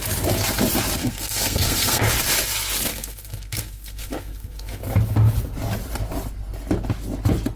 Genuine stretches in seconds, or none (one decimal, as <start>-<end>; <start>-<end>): 0.0-1.0; 2.0-2.9; 4.8-7.6